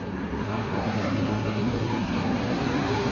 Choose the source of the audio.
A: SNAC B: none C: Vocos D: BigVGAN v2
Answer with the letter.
A